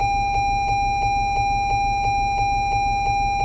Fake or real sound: real